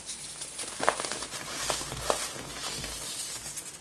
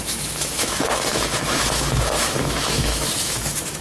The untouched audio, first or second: first